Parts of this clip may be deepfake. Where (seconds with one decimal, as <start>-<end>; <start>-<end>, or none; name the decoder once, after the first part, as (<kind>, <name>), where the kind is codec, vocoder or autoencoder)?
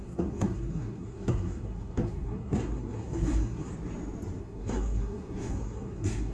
0.0-3.7 (codec, SNAC); 4.4-6.3